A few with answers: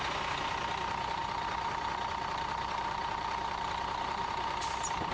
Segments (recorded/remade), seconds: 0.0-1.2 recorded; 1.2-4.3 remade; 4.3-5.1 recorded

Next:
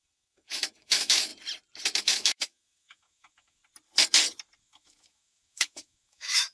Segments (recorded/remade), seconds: 0.0-1.3 remade; 1.3-2.0 recorded; 2.0-3.6 remade; 3.6-4.6 recorded; 4.6-6.5 remade

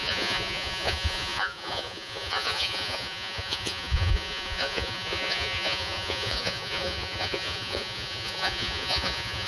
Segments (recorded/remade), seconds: 0.0-9.5 remade